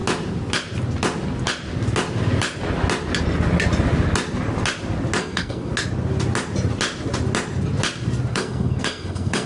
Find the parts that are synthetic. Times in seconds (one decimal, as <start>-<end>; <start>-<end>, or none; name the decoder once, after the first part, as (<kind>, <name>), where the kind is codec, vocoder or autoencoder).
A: 5.2-5.7 (codec, SNAC); 8.3-9.5